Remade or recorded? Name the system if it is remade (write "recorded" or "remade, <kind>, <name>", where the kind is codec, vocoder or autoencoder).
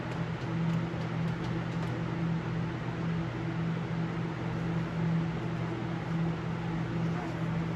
recorded